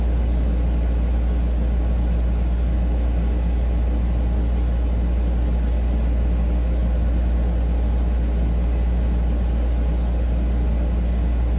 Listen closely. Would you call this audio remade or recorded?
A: recorded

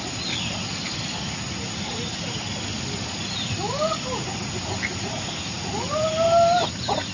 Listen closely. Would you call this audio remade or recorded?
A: recorded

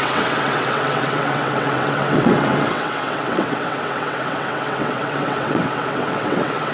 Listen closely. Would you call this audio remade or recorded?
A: remade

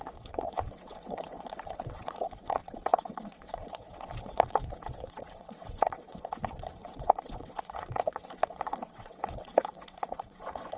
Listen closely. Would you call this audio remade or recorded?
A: remade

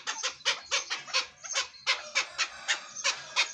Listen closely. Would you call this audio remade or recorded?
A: recorded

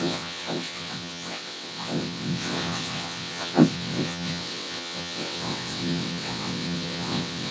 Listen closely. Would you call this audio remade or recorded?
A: remade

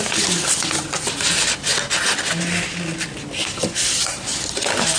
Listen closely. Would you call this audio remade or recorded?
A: recorded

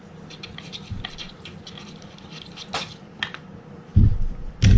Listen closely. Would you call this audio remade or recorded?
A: recorded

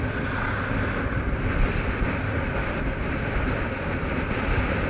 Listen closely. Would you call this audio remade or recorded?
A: recorded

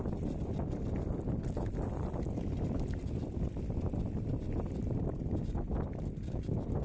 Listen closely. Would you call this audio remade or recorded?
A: recorded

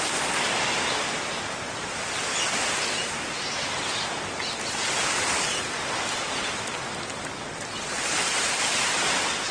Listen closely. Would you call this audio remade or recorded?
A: recorded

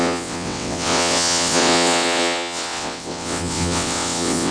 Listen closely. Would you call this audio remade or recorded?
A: remade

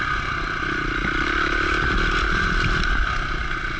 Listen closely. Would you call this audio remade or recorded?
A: recorded